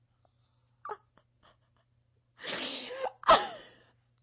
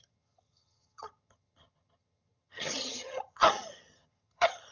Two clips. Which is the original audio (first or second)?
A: first